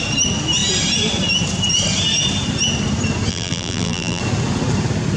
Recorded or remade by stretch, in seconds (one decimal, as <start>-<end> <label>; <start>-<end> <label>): 0.0-3.3 recorded; 3.3-4.2 remade; 4.2-5.2 recorded